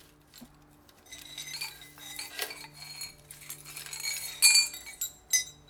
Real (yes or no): yes